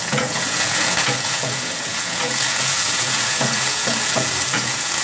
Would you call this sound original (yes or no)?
no